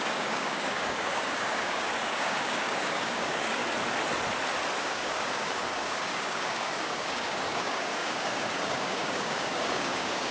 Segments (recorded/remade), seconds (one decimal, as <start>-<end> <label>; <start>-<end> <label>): 0.0-3.6 remade; 3.6-4.8 recorded; 4.8-10.3 remade